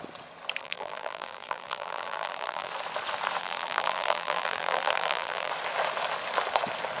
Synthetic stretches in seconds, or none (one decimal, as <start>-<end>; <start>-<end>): 0.6-2.7; 3.4-5.5